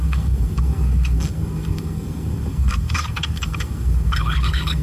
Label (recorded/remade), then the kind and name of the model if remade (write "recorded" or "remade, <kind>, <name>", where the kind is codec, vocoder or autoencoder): remade, codec, SNAC